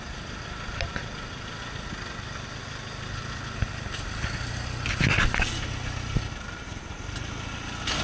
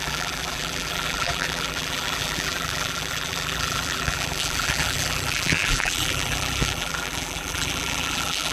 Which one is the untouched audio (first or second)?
first